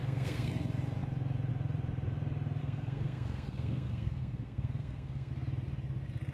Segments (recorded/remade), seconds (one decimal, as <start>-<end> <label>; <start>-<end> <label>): 0.0-0.5 remade; 0.5-2.6 recorded; 2.6-5.3 remade; 5.3-6.3 recorded